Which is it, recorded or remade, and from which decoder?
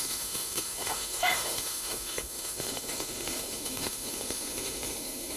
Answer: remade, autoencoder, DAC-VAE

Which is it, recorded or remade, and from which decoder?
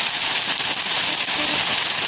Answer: recorded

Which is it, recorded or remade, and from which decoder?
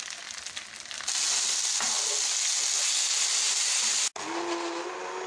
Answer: recorded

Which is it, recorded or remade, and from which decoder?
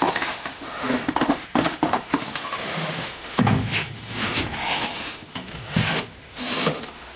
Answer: remade, autoencoder, DAC-VAE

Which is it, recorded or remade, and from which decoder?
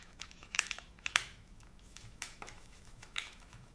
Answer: remade, autoencoder, DAC-VAE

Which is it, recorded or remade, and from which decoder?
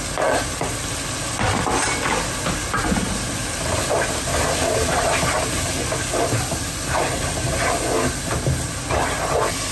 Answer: recorded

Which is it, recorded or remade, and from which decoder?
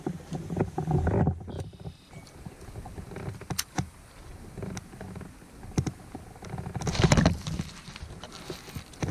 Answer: recorded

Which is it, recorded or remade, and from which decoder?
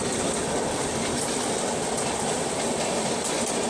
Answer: recorded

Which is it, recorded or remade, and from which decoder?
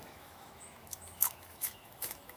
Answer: remade, autoencoder, DAC-VAE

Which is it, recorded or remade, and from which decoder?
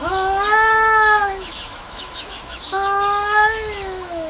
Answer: remade, autoencoder, DAC-VAE